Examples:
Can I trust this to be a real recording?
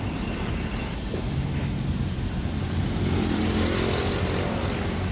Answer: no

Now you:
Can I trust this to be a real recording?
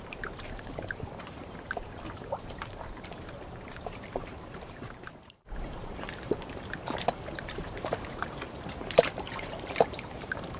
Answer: no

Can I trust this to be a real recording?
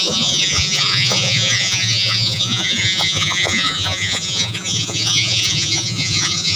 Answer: no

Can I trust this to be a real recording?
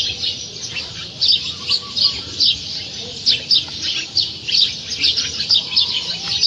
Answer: yes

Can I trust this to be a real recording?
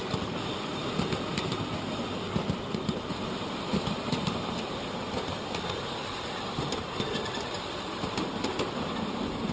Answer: yes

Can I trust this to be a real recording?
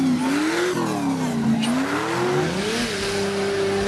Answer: yes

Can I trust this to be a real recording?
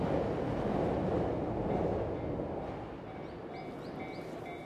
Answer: yes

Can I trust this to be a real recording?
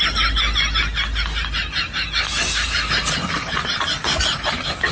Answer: yes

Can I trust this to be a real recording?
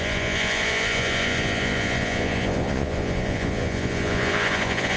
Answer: no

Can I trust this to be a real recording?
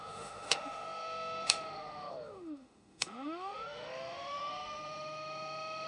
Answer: no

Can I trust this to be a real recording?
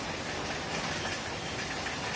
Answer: yes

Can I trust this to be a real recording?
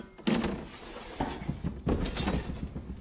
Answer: yes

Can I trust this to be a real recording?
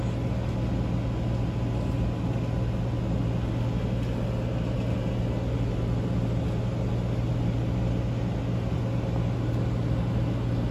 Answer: yes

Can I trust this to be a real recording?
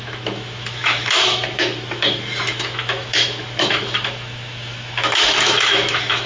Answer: no